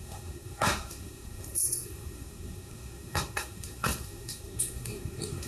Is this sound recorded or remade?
remade